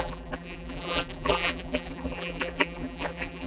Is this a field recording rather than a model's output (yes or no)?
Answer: no